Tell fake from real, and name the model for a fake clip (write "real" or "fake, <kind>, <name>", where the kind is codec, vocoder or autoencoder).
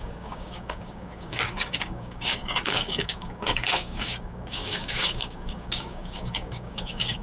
fake, codec, DAC